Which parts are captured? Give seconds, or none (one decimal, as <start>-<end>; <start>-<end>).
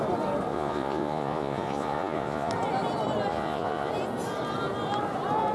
0.0-0.5; 2.5-3.3; 3.9-5.5